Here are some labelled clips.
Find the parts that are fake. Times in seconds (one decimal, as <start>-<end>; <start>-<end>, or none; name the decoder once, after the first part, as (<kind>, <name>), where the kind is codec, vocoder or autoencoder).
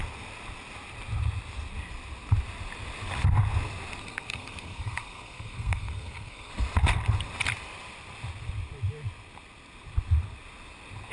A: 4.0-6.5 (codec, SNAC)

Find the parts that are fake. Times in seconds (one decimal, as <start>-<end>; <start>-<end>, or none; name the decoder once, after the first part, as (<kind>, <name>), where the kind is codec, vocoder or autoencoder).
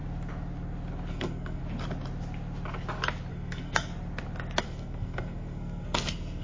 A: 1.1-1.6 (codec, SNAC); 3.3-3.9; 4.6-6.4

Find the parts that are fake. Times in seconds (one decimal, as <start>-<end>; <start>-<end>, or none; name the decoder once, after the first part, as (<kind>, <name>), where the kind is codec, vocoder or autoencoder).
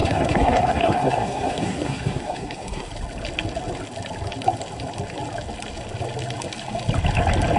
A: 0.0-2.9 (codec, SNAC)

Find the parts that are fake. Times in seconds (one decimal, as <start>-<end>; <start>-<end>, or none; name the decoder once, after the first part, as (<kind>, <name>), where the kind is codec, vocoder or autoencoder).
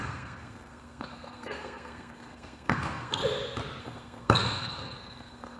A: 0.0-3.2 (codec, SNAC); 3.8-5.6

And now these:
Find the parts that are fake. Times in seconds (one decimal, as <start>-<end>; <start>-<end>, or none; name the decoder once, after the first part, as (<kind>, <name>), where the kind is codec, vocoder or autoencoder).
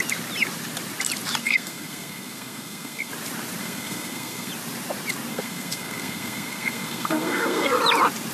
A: 1.4-3.1 (codec, SNAC); 3.6-4.5; 5.3-7.8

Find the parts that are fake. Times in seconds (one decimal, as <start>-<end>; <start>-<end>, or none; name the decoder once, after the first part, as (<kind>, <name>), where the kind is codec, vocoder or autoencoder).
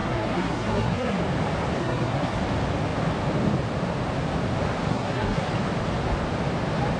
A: 0.0-1.2 (codec, SNAC); 1.8-2.4; 4.9-5.5